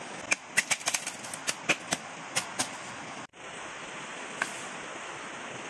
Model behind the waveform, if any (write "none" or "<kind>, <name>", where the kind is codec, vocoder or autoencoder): none